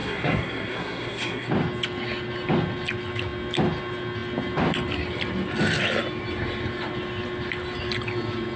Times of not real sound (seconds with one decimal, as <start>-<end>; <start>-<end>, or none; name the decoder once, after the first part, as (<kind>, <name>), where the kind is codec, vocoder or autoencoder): 0.0-1.5 (codec, SNAC)